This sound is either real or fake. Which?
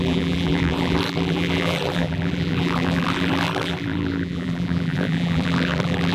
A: fake